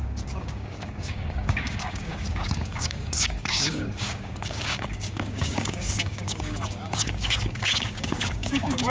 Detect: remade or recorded remade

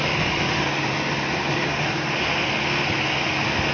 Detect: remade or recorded recorded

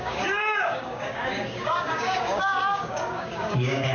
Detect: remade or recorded remade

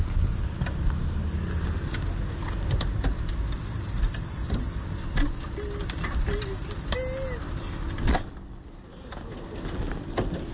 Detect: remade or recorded recorded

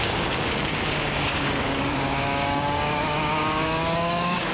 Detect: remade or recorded remade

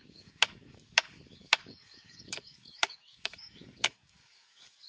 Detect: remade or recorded remade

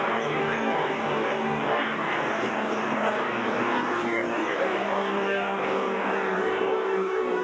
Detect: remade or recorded remade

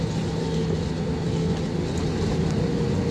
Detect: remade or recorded recorded